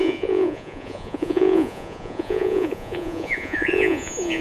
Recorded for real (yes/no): no